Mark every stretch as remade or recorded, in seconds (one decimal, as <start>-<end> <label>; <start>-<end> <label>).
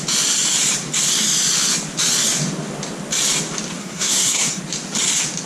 0.0-3.8 recorded; 3.8-4.6 remade; 4.6-5.5 recorded